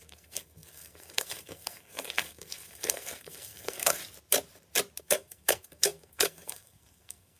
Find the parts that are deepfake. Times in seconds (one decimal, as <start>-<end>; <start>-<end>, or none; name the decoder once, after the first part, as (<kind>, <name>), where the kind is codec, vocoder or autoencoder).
0.0-4.0 (codec, SNAC); 5.0-7.4